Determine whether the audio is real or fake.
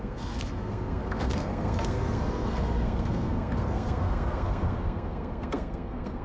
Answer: fake